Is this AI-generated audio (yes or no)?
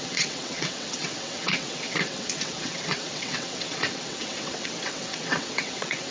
yes